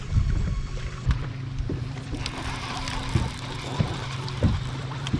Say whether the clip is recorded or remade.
remade